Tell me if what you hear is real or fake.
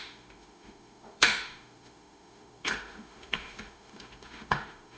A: fake